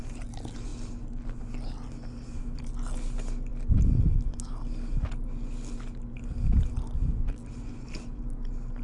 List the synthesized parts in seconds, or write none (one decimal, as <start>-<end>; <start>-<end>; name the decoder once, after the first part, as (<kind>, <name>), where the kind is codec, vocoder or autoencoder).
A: none